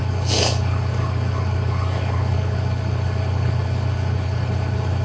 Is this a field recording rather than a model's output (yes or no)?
no